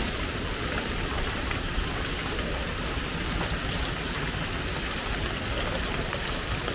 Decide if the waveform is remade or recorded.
recorded